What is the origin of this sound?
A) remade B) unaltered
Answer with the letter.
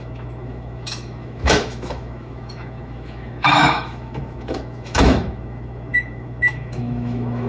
A